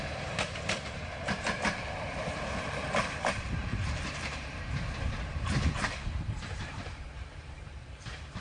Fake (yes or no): yes